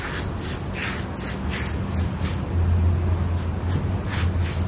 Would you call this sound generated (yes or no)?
no